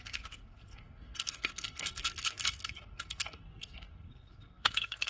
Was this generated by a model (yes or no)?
yes